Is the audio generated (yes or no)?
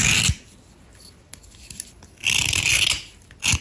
no